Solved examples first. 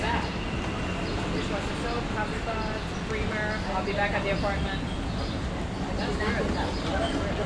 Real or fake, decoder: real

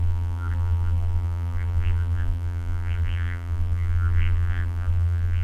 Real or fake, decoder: fake, vocoder, BigVGAN v2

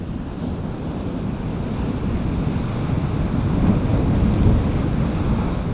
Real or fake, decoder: real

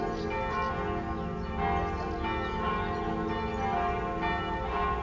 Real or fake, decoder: real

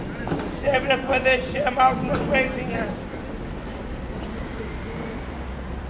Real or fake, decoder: real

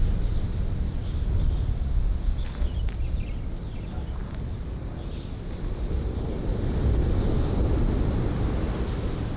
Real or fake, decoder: real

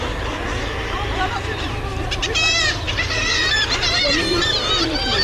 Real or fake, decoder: fake, vocoder, BigVGAN v2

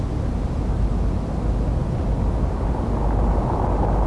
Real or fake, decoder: real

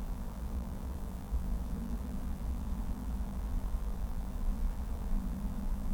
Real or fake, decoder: fake, vocoder, BigVGAN v2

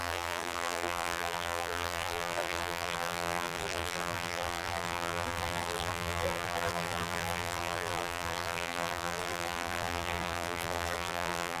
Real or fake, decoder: fake, vocoder, BigVGAN v2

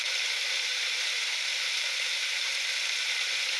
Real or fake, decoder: real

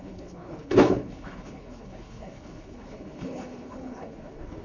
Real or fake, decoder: fake, codec, HILCodec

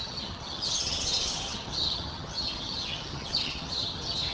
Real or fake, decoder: fake, vocoder, HiFi-GAN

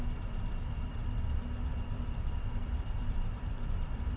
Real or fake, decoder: fake, vocoder, BigVGAN v2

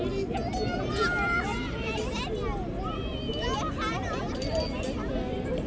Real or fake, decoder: real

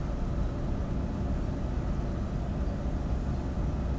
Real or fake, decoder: real